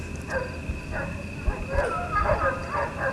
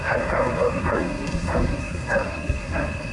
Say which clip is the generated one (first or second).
second